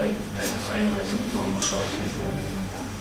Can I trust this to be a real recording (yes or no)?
no